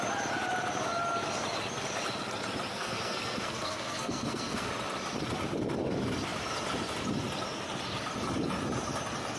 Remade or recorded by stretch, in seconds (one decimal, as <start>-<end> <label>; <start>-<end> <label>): 0.0-2.7 recorded; 2.7-4.7 remade; 4.7-9.4 recorded